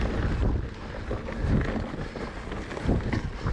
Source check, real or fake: real